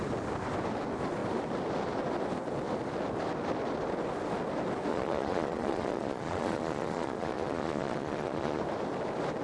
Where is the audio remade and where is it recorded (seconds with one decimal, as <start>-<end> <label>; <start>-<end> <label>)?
0.0-4.9 recorded; 4.9-8.6 remade; 8.6-9.4 recorded